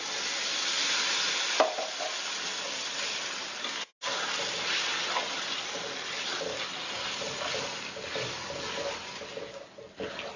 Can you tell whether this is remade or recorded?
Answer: recorded